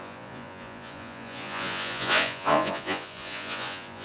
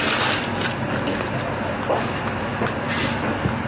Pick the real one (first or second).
second